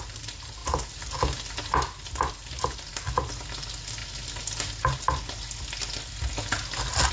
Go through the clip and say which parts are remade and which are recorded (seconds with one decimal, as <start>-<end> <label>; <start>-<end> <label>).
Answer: 0.0-7.1 recorded